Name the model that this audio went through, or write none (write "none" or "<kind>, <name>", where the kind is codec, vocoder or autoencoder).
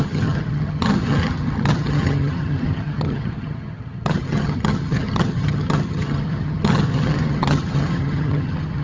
vocoder, HiFi-GAN